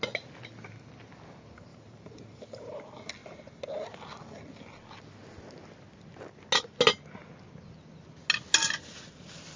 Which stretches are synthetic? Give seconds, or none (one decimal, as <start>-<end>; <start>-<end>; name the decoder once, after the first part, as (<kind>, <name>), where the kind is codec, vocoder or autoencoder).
1.7-2.8 (vocoder, BigVGAN v2)

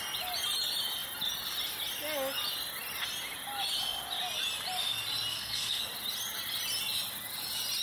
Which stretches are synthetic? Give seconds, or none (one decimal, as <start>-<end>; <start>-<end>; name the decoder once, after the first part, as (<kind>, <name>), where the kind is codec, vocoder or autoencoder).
5.3-5.8 (codec, SNAC)

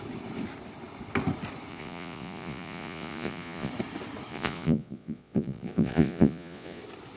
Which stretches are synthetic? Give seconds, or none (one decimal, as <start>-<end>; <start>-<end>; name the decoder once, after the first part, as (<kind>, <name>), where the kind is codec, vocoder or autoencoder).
1.7-3.7 (vocoder, Vocos); 4.3-6.8

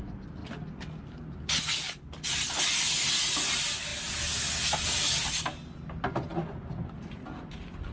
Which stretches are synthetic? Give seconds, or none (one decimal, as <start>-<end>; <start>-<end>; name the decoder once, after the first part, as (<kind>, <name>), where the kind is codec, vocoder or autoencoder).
none